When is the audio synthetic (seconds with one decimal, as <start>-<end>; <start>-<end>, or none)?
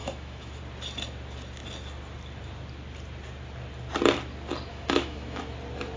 0.0-0.6; 4.7-5.4